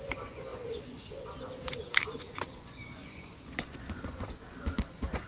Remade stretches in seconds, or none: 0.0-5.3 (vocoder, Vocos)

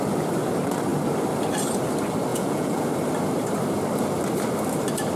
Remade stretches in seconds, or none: 2.3-2.9 (vocoder, Vocos)

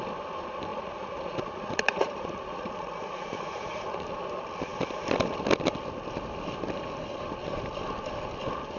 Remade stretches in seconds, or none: 0.7-4.0 (vocoder, Vocos)